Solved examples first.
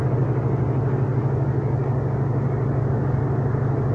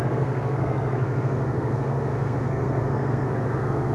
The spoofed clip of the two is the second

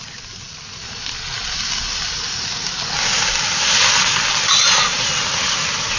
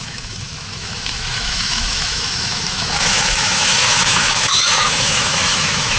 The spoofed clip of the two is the second